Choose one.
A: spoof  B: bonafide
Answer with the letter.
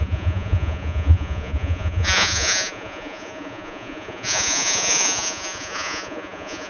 A